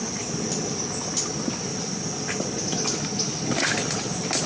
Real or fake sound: real